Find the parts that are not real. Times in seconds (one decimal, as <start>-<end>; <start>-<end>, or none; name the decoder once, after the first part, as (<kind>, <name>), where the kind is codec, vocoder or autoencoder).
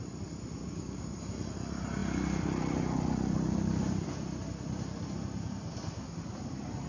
0.6-1.2 (codec, DAC)